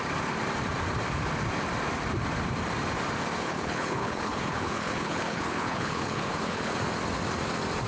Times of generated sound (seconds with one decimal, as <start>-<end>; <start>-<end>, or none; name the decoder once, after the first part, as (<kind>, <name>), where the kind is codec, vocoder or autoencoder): 3.4-6.7 (codec, HILCodec)